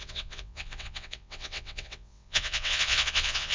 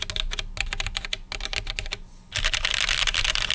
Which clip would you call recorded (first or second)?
second